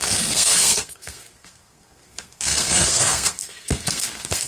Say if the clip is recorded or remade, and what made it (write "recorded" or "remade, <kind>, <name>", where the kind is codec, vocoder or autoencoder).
remade, codec, SNAC